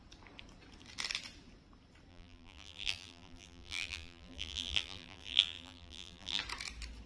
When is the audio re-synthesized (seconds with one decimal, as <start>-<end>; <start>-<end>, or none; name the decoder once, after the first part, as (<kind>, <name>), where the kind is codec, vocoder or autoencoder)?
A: 2.1-6.4 (vocoder, BigVGAN v2)

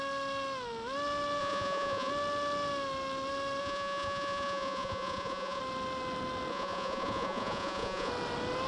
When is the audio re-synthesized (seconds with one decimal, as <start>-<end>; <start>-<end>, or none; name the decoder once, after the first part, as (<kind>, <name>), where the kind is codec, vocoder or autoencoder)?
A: 1.4-2.1 (vocoder, Vocos); 3.6-5.6; 6.5-8.1

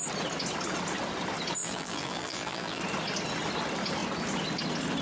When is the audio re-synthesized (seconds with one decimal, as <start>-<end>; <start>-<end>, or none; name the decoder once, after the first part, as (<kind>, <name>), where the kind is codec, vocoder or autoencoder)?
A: 1.6-2.8 (vocoder, BigVGAN v2)

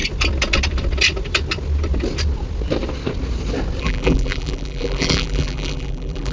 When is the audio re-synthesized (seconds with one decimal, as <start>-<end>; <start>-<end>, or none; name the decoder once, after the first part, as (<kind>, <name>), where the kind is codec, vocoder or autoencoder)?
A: 3.8-6.3 (vocoder, BigVGAN v2)

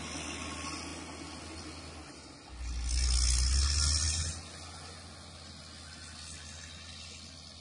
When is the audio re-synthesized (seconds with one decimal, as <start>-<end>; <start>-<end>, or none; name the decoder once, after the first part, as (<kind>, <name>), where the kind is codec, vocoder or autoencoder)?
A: none

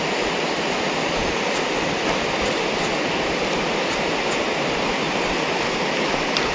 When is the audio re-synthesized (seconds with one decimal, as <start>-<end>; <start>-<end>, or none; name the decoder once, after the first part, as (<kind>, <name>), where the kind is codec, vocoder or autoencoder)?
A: none

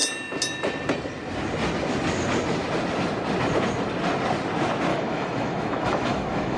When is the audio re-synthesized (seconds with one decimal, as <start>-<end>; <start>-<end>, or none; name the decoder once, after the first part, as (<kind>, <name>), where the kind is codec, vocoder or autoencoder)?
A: 4.9-6.6 (autoencoder, DAC-VAE)